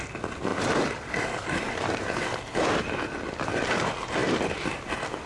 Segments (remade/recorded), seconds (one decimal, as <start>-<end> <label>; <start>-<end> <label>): 0.0-5.3 recorded